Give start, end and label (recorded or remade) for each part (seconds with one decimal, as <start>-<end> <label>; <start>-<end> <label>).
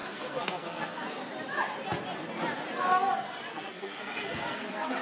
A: 0.0-1.0 remade; 1.0-3.5 recorded; 3.5-5.0 remade